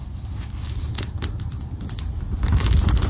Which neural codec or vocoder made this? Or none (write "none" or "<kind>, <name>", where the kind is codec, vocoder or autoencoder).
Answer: none